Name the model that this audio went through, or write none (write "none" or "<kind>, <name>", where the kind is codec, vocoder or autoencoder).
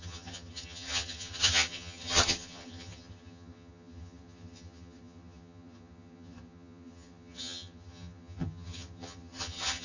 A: vocoder, HiFi-GAN